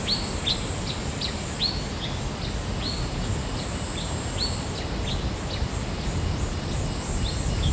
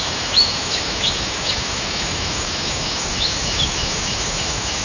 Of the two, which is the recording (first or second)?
first